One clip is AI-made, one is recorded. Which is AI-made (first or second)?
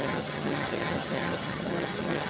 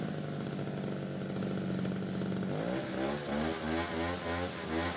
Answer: first